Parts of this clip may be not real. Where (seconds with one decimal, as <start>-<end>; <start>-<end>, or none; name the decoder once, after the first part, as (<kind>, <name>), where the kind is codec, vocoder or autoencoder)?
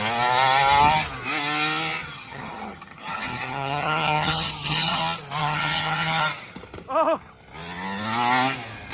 2.0-5.0 (vocoder, HiFi-GAN); 5.4-6.2